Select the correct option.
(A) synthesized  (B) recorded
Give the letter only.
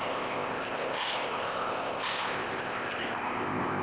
A